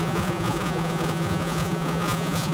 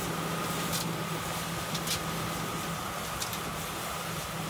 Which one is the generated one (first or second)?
first